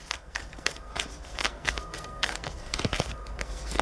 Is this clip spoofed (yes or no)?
yes